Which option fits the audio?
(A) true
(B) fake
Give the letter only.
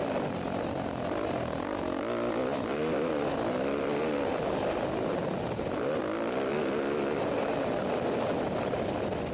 A